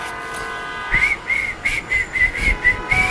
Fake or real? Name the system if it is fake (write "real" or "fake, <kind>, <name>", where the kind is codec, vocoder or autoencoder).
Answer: real